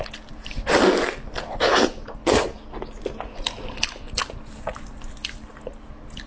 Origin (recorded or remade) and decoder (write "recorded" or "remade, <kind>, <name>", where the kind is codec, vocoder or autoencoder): recorded